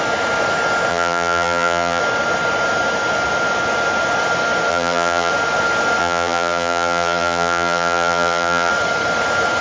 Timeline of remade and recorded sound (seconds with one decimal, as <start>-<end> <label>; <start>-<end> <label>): 0.0-0.9 recorded; 0.9-2.0 remade; 2.0-4.7 recorded; 4.7-5.3 remade; 5.3-6.0 recorded; 6.0-8.7 remade; 8.7-9.6 recorded